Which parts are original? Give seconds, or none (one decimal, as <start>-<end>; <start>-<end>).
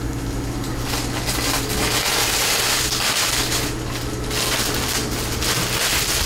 0.0-6.3